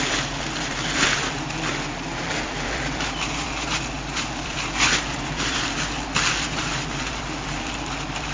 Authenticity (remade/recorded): remade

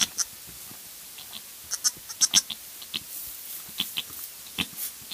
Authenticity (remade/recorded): recorded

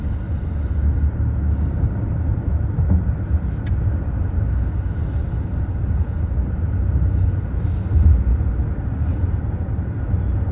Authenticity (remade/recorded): recorded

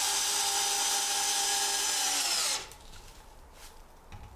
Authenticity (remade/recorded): recorded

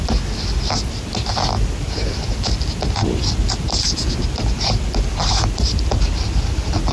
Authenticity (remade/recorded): recorded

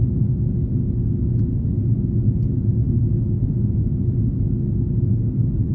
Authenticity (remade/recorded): recorded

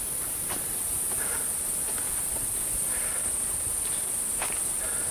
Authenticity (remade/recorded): remade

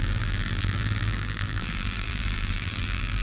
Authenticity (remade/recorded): remade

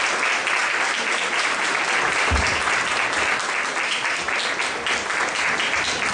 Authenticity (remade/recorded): remade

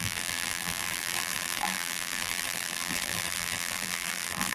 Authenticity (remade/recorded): remade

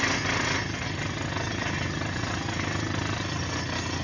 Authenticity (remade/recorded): recorded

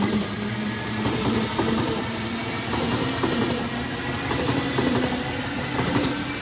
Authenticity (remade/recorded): recorded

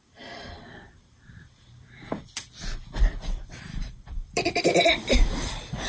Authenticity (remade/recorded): remade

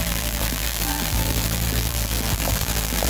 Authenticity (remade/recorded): remade